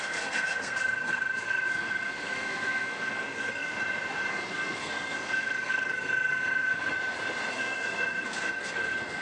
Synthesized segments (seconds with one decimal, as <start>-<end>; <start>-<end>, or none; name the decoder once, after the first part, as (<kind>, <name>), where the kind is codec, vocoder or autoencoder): 0.0-3.7 (codec, SNAC); 4.3-6.9; 7.5-9.2